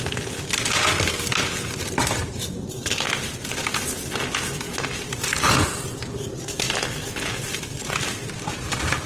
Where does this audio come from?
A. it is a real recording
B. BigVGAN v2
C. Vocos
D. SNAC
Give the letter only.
A